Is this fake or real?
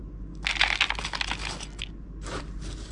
real